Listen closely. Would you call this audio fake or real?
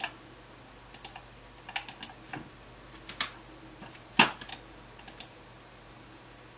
real